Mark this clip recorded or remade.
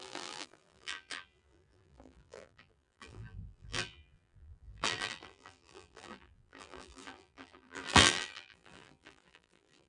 remade